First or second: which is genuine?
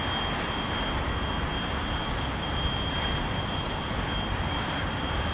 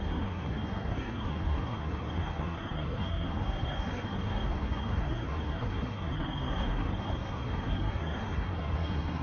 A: first